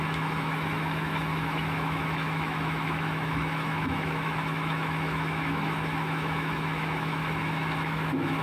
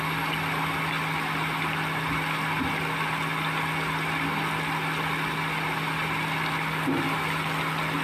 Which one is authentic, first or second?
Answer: second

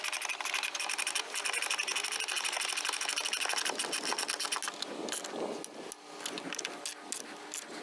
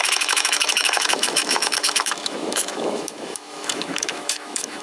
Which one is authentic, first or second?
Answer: first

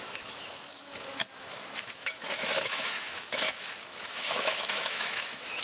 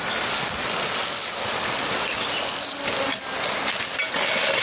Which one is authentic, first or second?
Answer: second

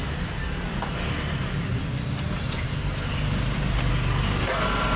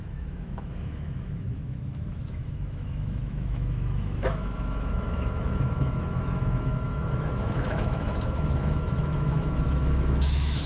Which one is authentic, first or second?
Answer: first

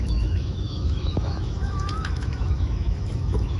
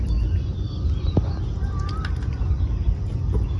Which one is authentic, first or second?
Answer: second